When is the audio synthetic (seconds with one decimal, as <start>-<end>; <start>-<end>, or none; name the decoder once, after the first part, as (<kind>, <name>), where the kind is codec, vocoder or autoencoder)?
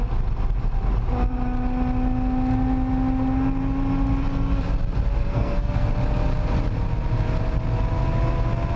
5.2-5.9 (codec, SNAC)